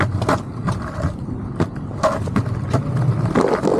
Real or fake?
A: real